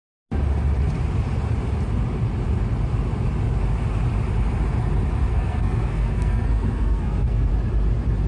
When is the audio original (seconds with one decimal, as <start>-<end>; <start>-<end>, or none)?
0.0-5.3; 7.5-8.3